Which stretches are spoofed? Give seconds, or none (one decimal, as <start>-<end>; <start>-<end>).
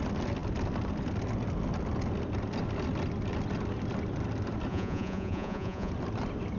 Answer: 4.7-5.9